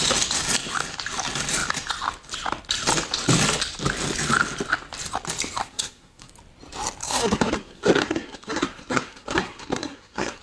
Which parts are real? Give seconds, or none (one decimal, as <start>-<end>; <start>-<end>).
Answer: 0.0-5.6; 6.3-7.0